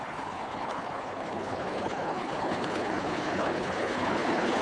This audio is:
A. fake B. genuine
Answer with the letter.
A